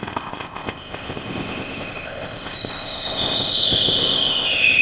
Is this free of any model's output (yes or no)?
no